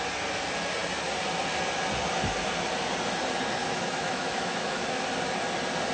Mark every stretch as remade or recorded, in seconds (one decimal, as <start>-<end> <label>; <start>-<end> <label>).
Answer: 0.0-3.6 recorded; 3.6-5.0 remade; 5.0-5.9 recorded